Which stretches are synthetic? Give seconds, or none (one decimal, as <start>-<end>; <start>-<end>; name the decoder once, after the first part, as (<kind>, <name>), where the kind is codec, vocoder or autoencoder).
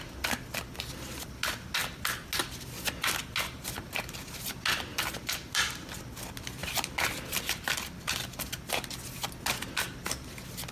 4.9-5.5 (vocoder, BigVGAN v2)